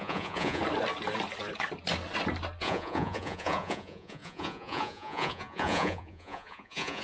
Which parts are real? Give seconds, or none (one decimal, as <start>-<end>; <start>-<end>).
0.6-2.6